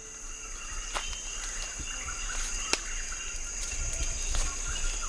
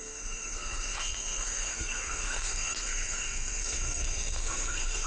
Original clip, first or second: first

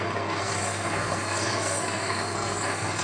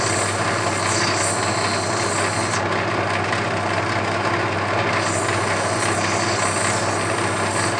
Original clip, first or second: second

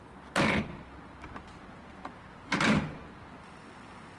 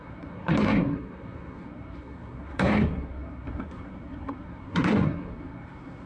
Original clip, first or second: first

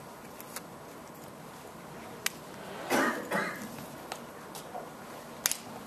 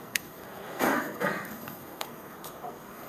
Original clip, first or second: first